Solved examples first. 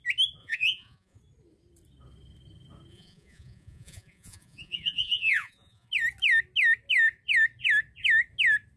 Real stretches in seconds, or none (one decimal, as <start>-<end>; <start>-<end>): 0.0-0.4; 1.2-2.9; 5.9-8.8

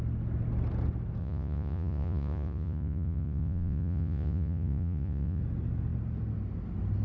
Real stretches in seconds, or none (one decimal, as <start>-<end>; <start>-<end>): 0.0-1.2; 5.4-7.0

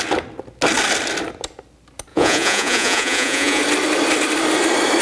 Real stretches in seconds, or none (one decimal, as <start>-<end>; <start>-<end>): 0.0-2.1; 3.6-5.0

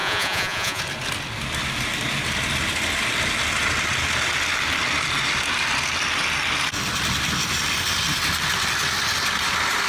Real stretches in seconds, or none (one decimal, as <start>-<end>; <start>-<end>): 0.8-9.9

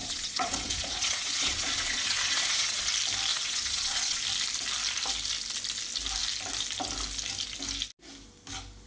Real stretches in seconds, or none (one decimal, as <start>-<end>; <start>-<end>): 2.9-3.3; 4.2-8.9

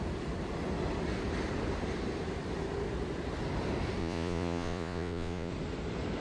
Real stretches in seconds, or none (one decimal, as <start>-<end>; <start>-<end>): 0.0-4.0; 5.5-6.2

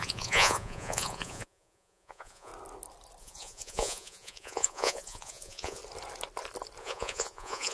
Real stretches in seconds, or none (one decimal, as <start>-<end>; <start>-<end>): 2.5-3.2; 5.8-6.8